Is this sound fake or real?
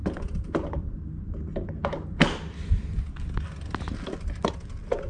real